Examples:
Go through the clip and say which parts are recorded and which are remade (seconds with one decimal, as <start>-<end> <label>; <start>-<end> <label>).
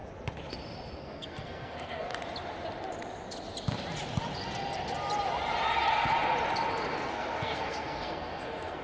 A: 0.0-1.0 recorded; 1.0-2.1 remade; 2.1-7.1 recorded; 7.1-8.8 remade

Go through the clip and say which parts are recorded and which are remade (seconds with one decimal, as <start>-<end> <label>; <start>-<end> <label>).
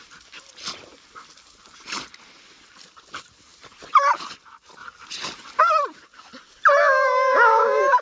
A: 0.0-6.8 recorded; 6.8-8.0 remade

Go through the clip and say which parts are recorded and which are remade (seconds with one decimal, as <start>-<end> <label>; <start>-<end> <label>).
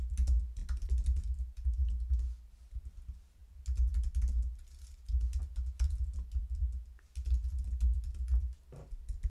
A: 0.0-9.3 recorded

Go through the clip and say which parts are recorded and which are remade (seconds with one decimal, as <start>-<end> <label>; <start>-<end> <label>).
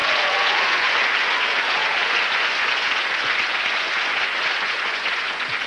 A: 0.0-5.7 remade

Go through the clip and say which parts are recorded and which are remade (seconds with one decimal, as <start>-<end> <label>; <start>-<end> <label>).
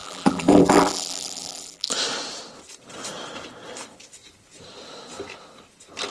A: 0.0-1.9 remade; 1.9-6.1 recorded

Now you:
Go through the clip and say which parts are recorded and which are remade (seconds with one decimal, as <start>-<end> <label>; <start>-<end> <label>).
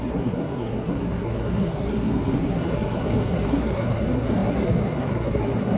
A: 0.0-5.8 remade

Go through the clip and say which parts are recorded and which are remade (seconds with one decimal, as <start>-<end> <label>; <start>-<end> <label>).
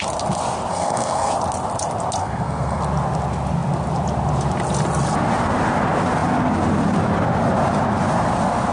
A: 0.0-0.7 recorded; 0.7-1.3 remade; 1.3-2.2 recorded; 2.2-2.8 remade; 2.8-8.7 recorded